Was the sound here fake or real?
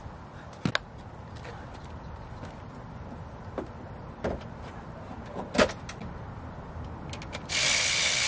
real